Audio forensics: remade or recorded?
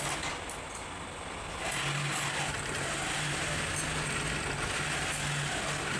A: recorded